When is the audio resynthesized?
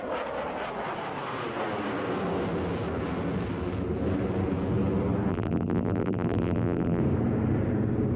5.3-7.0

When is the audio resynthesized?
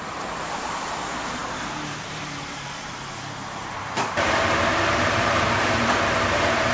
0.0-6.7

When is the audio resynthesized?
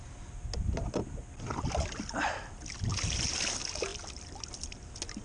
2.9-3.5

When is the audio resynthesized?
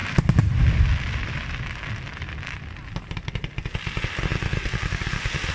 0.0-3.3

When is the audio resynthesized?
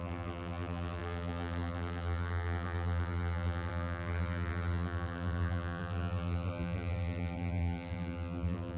0.0-8.8